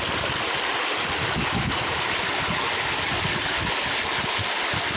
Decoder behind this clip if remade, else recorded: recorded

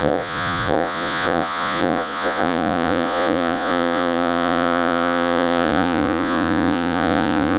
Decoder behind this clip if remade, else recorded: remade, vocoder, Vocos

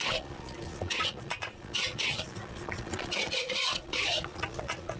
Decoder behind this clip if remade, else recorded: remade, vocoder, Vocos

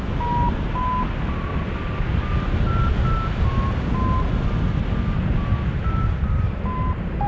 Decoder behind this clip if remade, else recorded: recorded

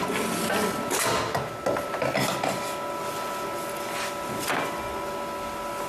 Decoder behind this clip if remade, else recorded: recorded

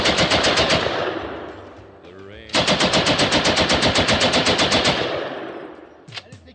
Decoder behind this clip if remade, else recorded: recorded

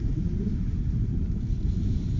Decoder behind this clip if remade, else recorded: remade, vocoder, BigVGAN v2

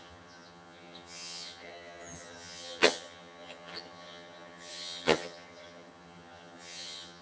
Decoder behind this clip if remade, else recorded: remade, vocoder, HiFi-GAN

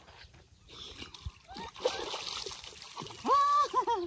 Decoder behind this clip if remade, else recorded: recorded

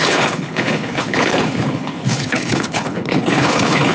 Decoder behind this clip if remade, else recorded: remade, codec, HILCodec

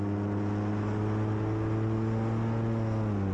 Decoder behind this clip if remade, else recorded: recorded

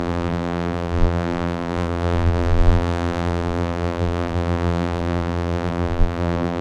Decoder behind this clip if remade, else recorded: remade, vocoder, BigVGAN v2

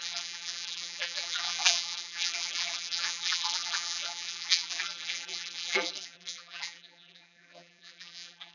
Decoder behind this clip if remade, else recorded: remade, vocoder, BigVGAN v2